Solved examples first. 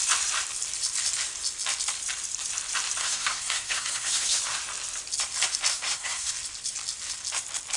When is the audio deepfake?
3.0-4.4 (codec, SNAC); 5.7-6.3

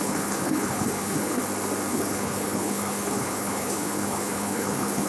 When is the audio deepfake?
0.0-1.4 (codec, HILCodec); 1.9-5.1

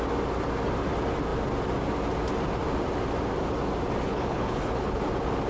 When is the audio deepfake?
4.1-5.0 (codec, HILCodec)

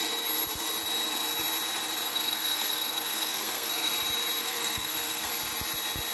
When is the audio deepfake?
2.1-3.9 (codec, SNAC); 4.4-5.3

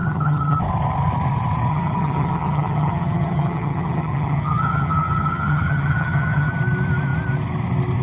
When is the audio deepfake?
0.0-0.6 (vocoder, HiFi-GAN); 1.7-6.5

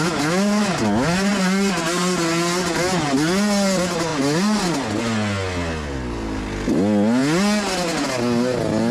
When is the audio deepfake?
none

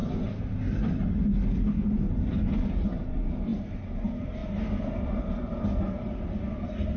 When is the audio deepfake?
none

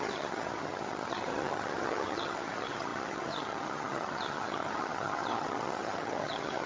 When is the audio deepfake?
0.0-6.7 (vocoder, HiFi-GAN)